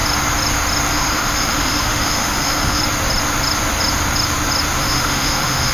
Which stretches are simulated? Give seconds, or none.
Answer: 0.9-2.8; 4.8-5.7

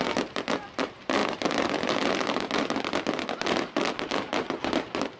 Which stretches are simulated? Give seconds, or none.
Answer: none

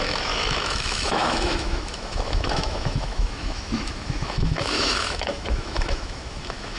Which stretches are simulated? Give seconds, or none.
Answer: 0.0-6.8

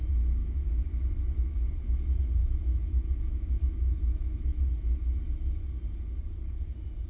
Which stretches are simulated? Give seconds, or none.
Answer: 0.4-0.9; 2.4-4.6